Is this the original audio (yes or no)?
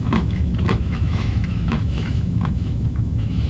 no